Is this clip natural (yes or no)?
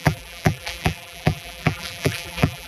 no